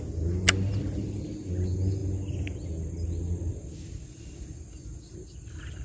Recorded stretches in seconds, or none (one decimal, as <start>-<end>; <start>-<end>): 0.0-5.8